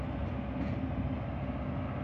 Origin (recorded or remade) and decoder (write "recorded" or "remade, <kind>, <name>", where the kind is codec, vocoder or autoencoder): recorded